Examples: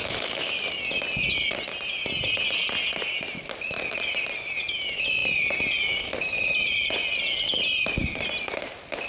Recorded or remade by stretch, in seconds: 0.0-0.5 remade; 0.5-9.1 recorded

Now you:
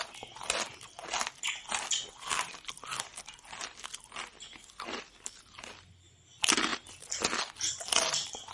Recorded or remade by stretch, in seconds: 0.0-8.5 recorded

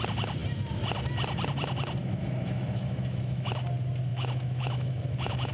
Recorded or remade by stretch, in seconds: 0.0-2.0 recorded; 2.0-3.5 remade; 3.5-4.1 recorded; 4.1-5.5 remade

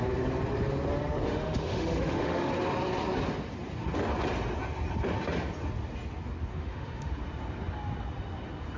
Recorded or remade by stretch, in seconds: 0.0-1.3 recorded; 1.3-2.5 remade; 2.5-6.5 recorded; 6.5-7.1 remade; 7.1-8.8 recorded

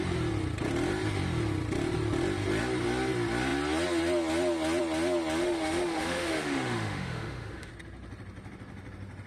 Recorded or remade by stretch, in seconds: 0.0-5.4 recorded; 5.4-7.7 remade; 7.7-9.3 recorded